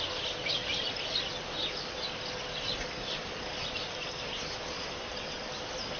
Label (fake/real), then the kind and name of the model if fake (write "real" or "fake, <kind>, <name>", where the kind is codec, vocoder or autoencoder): real